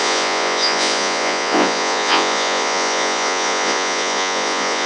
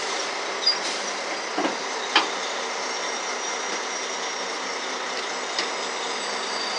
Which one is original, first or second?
second